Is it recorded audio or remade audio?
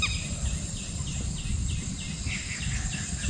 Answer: recorded